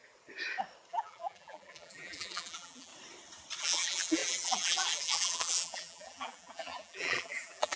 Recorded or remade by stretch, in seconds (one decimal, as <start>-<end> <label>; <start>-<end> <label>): 0.0-0.9 recorded; 0.9-2.9 remade; 2.9-3.6 recorded; 3.6-7.8 remade